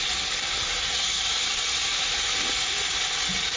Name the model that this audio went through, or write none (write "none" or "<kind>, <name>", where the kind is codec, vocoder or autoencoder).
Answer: none